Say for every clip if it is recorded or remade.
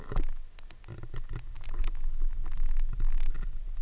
recorded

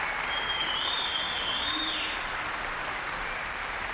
remade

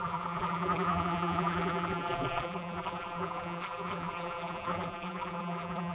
remade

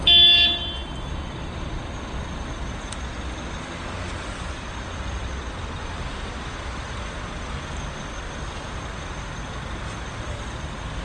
recorded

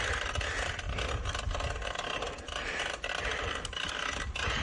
recorded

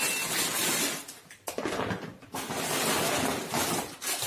recorded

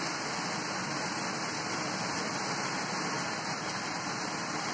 recorded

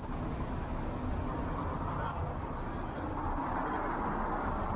recorded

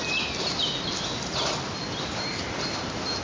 recorded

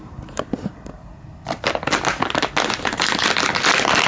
recorded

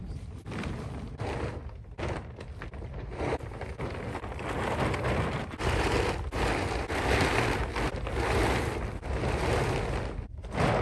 recorded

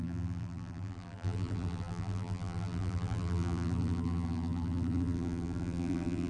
remade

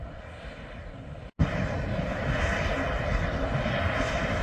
recorded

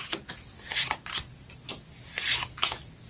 recorded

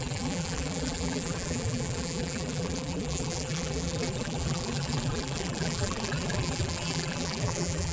remade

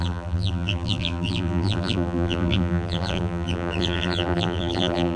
remade